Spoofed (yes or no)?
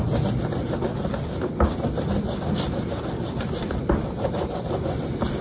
no